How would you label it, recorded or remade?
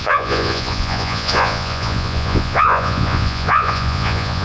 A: remade